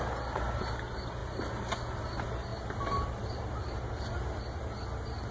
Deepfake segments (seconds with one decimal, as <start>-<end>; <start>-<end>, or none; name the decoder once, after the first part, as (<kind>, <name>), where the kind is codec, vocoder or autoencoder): 1.2-2.0 (vocoder, BigVGAN v2); 2.5-4.4

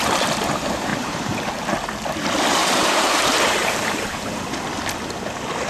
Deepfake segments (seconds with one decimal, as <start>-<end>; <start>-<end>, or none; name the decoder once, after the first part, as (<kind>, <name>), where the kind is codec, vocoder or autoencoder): 0.9-1.5 (vocoder, BigVGAN v2); 2.6-4.4

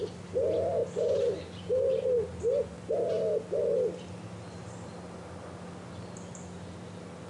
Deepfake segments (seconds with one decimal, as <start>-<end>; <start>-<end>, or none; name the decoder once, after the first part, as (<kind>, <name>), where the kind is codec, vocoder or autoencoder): 0.8-2.0 (vocoder, BigVGAN v2)